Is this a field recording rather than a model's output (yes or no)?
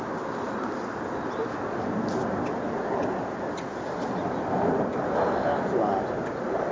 yes